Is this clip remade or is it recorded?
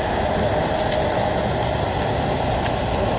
recorded